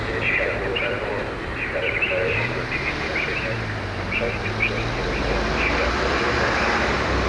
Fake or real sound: real